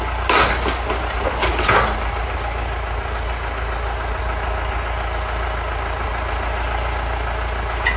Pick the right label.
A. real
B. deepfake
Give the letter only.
A